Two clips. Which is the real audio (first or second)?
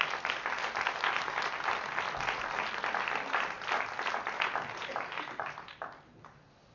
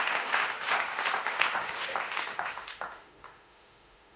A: first